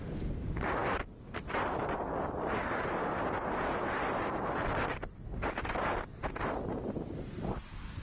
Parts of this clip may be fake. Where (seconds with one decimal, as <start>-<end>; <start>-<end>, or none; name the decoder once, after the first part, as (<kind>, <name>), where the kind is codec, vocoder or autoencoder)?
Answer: none